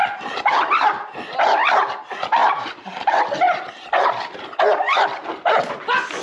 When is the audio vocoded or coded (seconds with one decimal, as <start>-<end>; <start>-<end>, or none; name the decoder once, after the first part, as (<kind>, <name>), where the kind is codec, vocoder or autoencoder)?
2.4-5.7 (vocoder, BigVGAN v2)